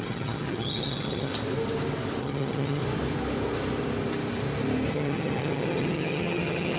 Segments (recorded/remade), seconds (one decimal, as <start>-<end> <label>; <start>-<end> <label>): 0.0-1.3 remade; 1.3-2.2 recorded; 2.2-2.8 remade; 2.8-4.9 recorded; 4.9-6.8 remade